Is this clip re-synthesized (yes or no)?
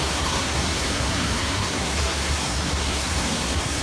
yes